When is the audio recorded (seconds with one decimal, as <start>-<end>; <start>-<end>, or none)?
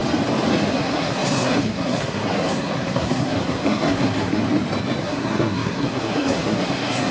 0.0-0.7; 4.4-5.0